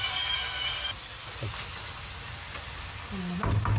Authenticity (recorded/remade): recorded